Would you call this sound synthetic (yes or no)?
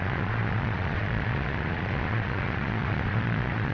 yes